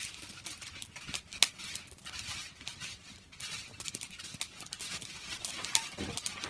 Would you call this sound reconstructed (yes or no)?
no